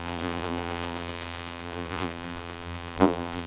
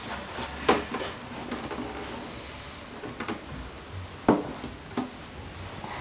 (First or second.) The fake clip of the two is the first